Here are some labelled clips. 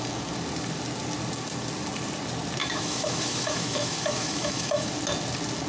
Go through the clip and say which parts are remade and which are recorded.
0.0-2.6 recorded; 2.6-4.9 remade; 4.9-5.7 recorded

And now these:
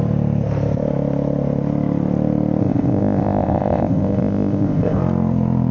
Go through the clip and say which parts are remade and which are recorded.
0.0-2.6 recorded; 2.6-5.0 remade; 5.0-5.7 recorded

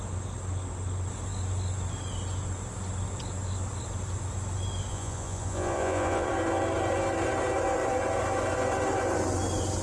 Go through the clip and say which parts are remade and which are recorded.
0.0-4.9 recorded; 4.9-6.3 remade; 6.3-9.8 recorded

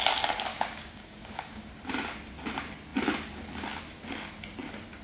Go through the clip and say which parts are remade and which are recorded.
0.0-0.5 recorded; 0.5-1.7 remade; 1.7-5.0 recorded

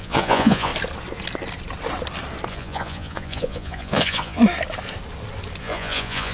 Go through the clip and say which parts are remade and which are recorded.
0.0-0.7 remade; 0.7-2.5 recorded; 2.5-4.4 remade; 4.4-5.6 recorded; 5.6-6.3 remade

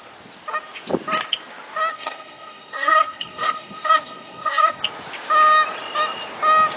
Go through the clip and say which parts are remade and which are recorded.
0.0-1.9 recorded; 1.9-4.8 remade; 4.8-6.8 recorded